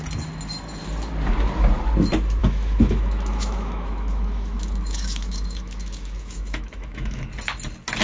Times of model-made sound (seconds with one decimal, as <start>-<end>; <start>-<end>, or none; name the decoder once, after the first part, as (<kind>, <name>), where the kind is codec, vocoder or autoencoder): 2.4-7.2 (autoencoder, DAC-VAE)

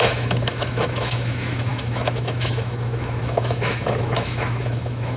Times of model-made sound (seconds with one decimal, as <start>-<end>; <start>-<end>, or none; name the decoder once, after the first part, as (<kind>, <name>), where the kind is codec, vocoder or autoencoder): 0.0-5.2 (autoencoder, DAC-VAE)

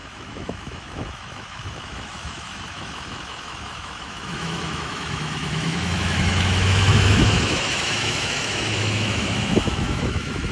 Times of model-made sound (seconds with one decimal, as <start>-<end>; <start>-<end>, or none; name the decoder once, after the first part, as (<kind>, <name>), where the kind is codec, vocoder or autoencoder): 0.0-10.5 (autoencoder, DAC-VAE)

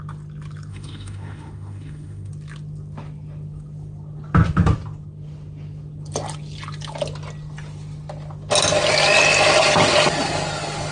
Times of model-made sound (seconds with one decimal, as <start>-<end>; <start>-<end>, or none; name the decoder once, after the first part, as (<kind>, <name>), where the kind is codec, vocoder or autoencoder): 0.7-2.3 (autoencoder, DAC-VAE)